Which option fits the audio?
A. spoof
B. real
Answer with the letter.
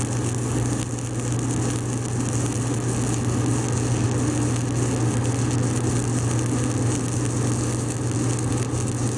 B